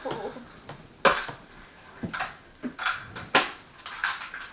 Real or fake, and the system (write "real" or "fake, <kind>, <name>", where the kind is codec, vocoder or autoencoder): real